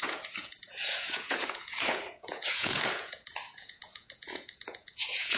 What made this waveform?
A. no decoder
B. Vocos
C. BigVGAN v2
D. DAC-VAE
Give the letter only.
B